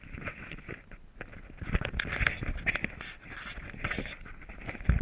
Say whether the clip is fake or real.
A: real